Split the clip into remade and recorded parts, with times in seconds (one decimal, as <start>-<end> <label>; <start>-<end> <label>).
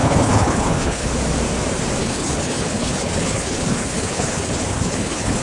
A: 0.0-1.1 remade; 1.1-2.0 recorded; 2.0-5.4 remade